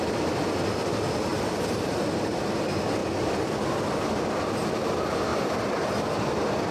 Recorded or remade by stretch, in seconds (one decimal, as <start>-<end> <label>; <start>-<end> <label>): 0.0-1.3 recorded; 1.3-2.2 remade; 2.2-6.7 recorded